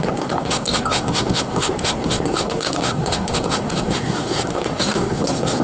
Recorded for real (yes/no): no